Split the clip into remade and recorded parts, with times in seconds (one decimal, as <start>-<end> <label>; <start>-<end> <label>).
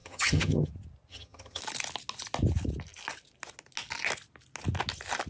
0.0-0.7 remade; 0.7-1.1 recorded; 1.1-1.6 remade; 1.6-5.3 recorded